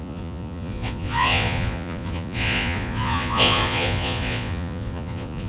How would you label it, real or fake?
fake